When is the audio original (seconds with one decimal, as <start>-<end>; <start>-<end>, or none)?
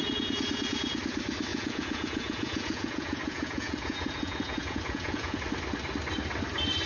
1.0-1.5; 5.4-6.9